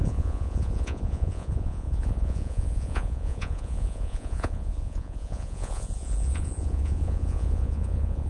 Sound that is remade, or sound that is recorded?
remade